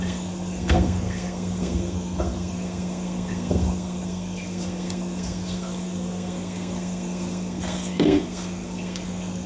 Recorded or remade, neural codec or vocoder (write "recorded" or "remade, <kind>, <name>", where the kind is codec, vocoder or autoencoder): remade, codec, SNAC